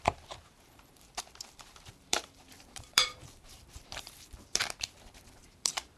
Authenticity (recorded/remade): remade